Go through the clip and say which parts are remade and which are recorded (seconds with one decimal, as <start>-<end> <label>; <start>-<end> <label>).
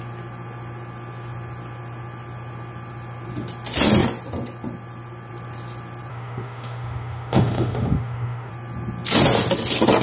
0.0-6.1 recorded; 6.1-8.5 remade; 8.5-10.0 recorded